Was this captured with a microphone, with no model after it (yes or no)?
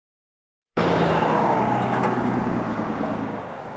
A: no